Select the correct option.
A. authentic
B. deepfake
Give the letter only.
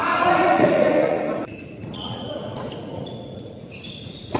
B